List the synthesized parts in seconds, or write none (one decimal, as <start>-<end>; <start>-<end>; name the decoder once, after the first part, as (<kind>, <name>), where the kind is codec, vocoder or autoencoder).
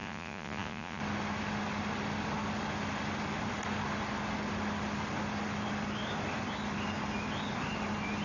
0.0-1.0 (vocoder, Vocos)